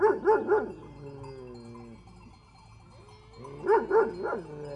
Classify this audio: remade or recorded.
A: recorded